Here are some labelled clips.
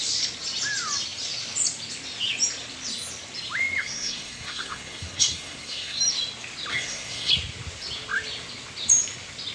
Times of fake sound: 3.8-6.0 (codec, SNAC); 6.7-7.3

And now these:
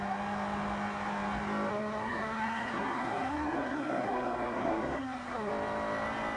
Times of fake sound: 1.7-5.5 (codec, SNAC)

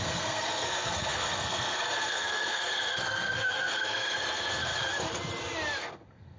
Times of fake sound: 0.0-4.7 (codec, SNAC); 5.8-6.4

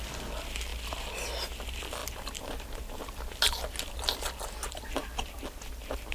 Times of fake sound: none

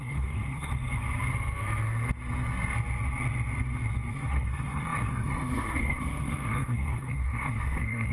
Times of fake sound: 0.0-0.7 (codec, SNAC); 4.1-8.1

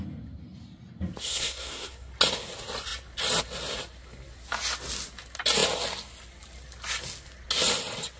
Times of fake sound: 1.2-2.1 (codec, SNAC)

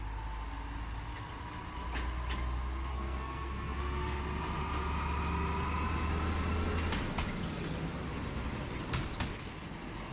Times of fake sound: 2.9-4.2 (codec, SNAC)

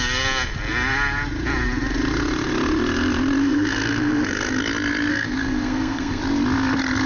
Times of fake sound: 3.4-4.6 (codec, SNAC); 5.1-6.2